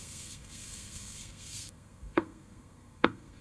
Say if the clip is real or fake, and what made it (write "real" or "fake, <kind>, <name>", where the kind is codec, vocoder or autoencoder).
fake, codec, SNAC